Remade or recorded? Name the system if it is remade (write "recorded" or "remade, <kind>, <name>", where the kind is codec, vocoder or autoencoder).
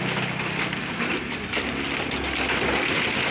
recorded